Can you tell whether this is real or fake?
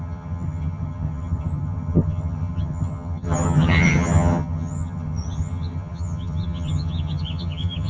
fake